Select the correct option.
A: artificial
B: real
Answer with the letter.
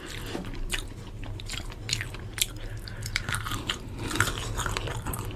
A